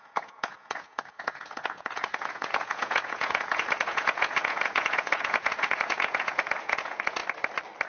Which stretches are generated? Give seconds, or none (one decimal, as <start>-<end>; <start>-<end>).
0.0-7.2